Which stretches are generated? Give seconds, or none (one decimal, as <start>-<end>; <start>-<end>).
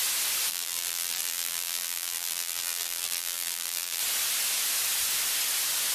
0.5-4.0